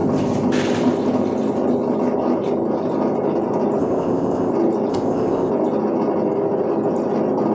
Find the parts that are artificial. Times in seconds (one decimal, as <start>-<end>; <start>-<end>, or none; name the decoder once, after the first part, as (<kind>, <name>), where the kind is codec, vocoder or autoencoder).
3.8-4.5 (codec, ZipCodec); 4.9-5.5